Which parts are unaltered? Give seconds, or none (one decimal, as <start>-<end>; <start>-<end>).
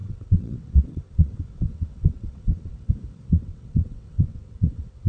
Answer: 2.9-3.3